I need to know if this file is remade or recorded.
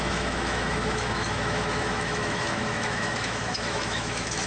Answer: remade